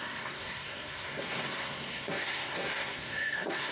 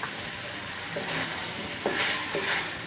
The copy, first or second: first